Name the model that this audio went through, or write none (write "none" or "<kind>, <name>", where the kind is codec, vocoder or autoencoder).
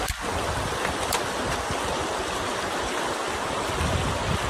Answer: none